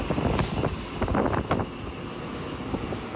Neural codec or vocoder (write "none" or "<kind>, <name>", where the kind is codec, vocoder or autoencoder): none